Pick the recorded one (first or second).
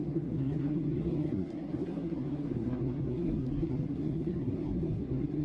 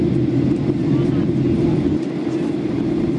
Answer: second